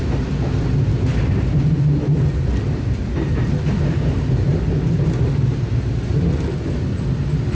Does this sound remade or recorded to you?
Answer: recorded